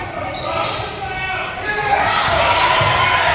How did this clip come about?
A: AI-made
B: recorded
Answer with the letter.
B